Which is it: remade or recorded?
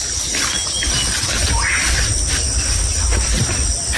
recorded